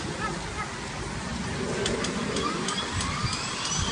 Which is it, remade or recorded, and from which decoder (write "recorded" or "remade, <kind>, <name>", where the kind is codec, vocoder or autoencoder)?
recorded